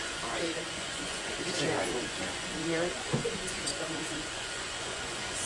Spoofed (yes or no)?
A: yes